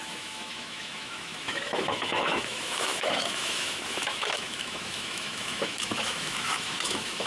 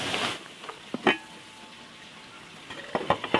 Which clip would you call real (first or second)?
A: second